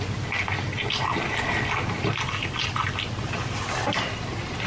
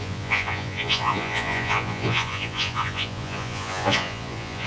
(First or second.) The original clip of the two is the first